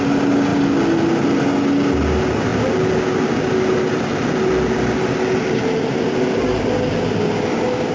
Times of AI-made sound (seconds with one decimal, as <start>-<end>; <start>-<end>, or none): 0.0-0.5; 1.0-7.9